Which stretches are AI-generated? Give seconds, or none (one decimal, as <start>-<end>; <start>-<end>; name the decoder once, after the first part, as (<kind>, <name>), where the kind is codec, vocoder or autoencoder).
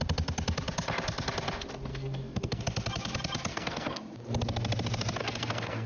1.9-2.6 (codec, SNAC); 3.5-4.0; 5.2-5.9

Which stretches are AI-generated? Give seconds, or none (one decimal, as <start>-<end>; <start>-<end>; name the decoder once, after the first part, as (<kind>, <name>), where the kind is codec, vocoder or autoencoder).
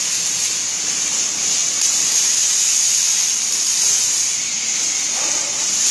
none